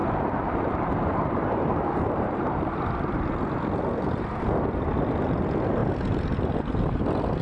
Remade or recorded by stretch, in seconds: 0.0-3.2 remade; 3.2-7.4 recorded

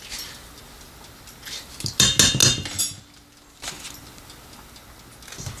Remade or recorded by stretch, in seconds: 0.0-5.6 recorded

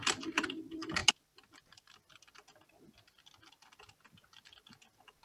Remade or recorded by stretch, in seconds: 0.0-5.2 recorded

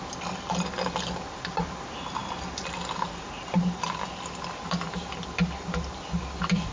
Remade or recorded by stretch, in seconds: 0.0-6.7 recorded